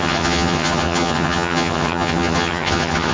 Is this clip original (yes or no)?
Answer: no